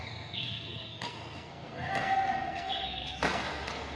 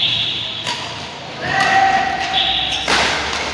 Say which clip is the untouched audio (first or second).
second